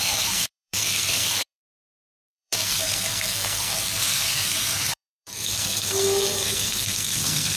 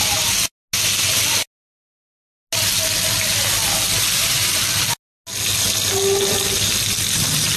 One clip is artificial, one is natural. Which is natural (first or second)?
second